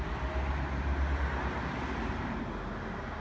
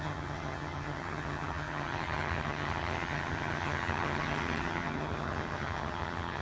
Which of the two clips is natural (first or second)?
first